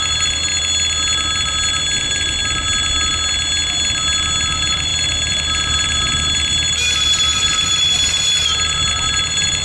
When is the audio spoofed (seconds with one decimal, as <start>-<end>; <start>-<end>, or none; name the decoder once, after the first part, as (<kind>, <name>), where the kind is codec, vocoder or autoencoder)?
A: 0.0-0.5 (vocoder, BigVGAN v2); 2.0-2.4; 4.5-9.6